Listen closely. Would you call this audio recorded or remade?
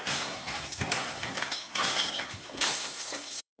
remade